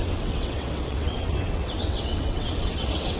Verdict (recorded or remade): remade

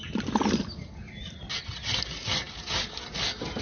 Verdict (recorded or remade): recorded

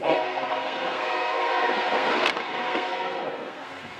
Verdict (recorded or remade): remade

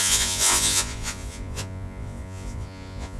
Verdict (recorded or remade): remade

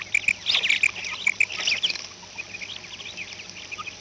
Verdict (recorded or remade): recorded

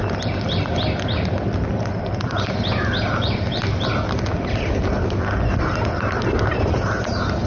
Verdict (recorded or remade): recorded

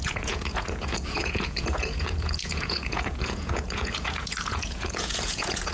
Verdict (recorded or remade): remade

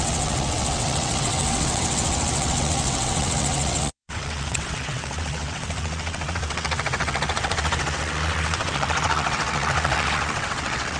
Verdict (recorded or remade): remade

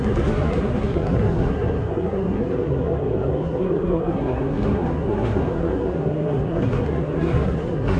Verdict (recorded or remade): remade